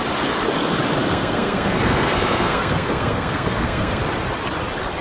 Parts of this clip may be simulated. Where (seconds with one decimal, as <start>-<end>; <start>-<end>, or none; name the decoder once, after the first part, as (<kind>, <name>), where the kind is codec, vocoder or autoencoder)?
1.0-4.0 (codec, SNAC)